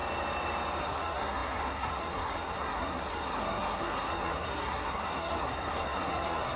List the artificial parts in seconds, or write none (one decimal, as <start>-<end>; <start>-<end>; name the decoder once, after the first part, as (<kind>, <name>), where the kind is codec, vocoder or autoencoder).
0.8-6.6 (codec, SNAC)